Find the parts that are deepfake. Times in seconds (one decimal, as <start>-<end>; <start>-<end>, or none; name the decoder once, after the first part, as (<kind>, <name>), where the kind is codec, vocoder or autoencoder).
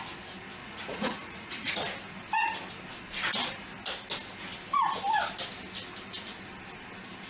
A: 0.6-1.7 (vocoder, Vocos)